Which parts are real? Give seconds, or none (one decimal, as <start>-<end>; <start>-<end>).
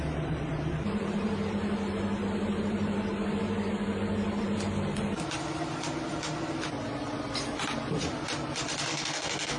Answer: 0.0-8.9